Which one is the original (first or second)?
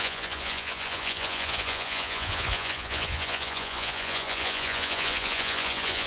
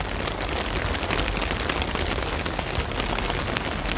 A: second